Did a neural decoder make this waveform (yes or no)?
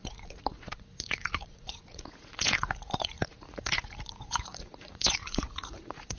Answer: yes